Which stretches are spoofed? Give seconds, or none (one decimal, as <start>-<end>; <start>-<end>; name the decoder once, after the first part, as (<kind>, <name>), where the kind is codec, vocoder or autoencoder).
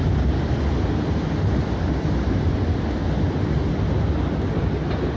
none